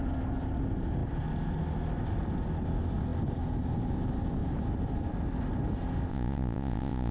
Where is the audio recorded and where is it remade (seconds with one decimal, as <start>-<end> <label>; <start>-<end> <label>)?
0.0-6.1 recorded; 6.1-7.1 remade

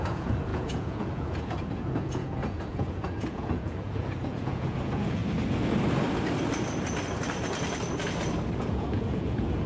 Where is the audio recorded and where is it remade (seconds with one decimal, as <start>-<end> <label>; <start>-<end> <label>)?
0.0-5.2 remade; 5.2-8.6 recorded; 8.6-9.7 remade

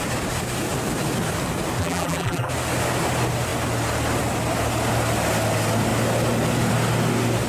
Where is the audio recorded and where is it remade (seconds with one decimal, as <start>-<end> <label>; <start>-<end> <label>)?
0.0-1.8 recorded; 1.8-2.5 remade; 2.5-7.5 recorded

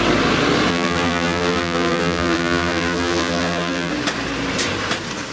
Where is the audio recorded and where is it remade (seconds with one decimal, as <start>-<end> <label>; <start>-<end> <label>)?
0.0-0.7 recorded; 0.7-3.9 remade; 3.9-5.3 recorded

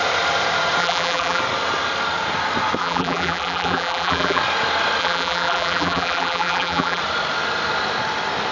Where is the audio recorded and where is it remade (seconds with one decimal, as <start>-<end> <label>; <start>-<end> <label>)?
0.0-0.8 recorded; 0.8-1.4 remade; 1.4-2.8 recorded; 2.8-4.4 remade; 4.4-5.0 recorded; 5.0-7.0 remade; 7.0-8.5 recorded